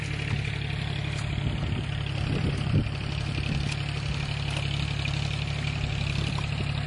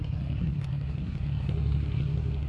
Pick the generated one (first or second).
second